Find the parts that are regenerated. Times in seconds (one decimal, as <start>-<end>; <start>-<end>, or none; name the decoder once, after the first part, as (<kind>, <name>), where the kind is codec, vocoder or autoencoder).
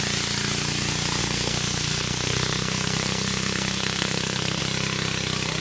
1.2-4.6 (codec, SNAC)